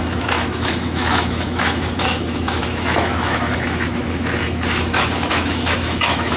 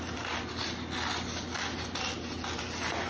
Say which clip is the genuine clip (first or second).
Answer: second